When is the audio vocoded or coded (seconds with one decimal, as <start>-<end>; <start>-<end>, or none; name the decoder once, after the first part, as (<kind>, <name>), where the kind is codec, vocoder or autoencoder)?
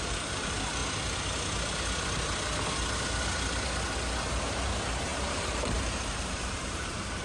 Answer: 0.0-0.8 (vocoder, BigVGAN v2); 4.3-7.2